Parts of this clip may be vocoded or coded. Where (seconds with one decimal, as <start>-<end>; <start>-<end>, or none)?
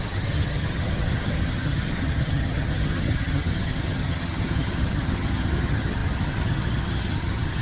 0.0-7.6